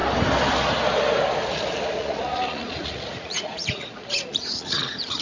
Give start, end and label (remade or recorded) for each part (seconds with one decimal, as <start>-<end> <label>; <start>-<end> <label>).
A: 0.0-2.0 recorded; 2.0-5.2 remade

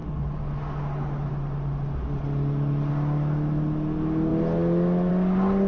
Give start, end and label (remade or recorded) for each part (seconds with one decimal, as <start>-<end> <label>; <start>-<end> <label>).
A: 0.0-5.7 recorded

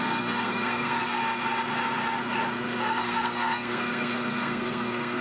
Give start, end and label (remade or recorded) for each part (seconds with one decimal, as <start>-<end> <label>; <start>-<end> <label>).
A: 0.0-1.2 remade; 1.2-2.8 recorded; 2.8-5.2 remade

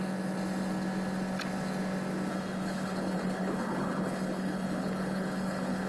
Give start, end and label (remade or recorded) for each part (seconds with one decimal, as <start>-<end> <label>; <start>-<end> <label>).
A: 0.0-2.3 recorded; 2.3-5.9 remade

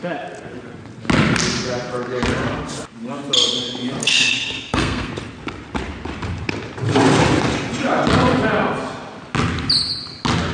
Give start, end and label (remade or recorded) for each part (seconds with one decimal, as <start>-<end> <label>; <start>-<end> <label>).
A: 0.0-4.0 recorded; 4.0-5.1 remade; 5.1-10.5 recorded

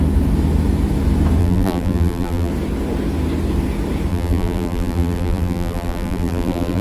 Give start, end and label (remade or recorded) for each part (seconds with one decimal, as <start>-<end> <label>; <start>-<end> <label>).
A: 0.0-1.4 recorded; 1.4-2.5 remade; 2.5-4.1 recorded; 4.1-6.8 remade

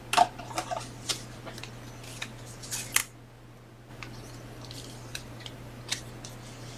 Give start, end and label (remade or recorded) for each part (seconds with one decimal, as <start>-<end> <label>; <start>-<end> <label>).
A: 0.0-5.1 recorded; 5.1-5.8 remade; 5.8-6.8 recorded